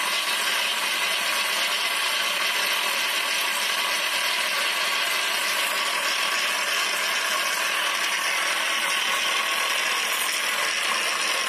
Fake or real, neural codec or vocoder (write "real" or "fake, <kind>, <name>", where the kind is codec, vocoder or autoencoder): real